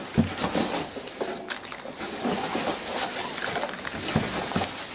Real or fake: real